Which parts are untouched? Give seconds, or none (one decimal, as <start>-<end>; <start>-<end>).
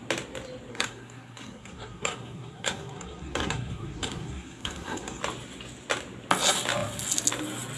0.0-0.7; 5.2-7.8